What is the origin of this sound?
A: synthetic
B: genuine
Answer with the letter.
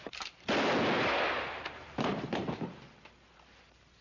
B